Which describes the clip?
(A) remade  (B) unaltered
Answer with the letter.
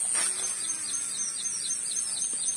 B